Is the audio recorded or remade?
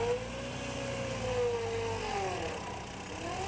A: recorded